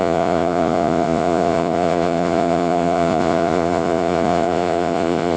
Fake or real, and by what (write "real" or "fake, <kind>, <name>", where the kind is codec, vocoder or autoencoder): fake, vocoder, Vocos